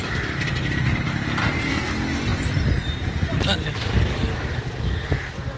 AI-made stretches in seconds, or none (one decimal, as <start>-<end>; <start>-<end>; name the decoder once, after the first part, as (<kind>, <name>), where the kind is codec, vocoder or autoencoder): 1.4-1.9 (codec, SNAC)

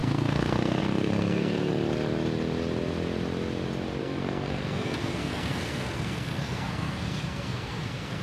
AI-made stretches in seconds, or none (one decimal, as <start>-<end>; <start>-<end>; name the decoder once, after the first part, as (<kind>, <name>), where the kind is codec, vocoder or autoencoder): 0.0-1.7 (codec, SNAC); 4.0-8.2

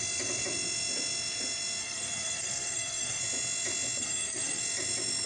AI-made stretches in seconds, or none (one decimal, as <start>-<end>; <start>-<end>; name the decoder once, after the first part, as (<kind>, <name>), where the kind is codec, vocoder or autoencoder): 1.8-3.2 (codec, SNAC); 4.0-4.6

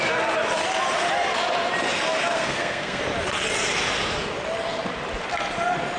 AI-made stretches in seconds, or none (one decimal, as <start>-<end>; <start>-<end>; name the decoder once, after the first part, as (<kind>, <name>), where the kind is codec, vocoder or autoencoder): 2.3-3.0 (codec, SNAC)

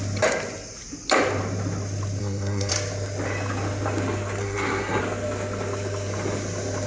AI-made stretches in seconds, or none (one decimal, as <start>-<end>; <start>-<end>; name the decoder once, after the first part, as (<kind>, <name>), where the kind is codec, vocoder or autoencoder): 2.2-2.7 (codec, SNAC); 4.4-5.0

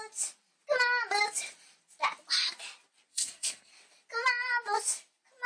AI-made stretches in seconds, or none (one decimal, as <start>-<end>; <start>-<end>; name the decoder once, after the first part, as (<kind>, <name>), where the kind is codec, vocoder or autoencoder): 3.1-3.7 (codec, SNAC)

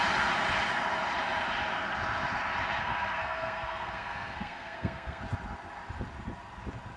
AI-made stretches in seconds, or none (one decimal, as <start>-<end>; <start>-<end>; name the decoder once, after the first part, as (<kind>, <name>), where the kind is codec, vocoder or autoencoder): 2.8-5.2 (codec, SNAC)